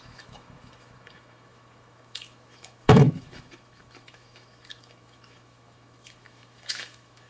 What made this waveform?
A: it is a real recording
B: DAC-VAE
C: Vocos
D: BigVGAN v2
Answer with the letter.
B